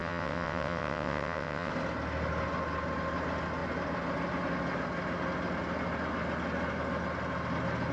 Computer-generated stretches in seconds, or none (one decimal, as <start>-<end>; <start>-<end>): 0.0-1.7